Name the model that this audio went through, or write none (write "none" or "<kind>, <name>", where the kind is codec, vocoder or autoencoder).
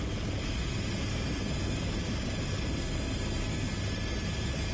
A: none